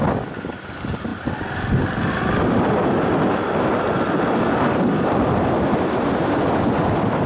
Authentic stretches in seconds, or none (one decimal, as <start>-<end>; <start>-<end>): 0.0-7.3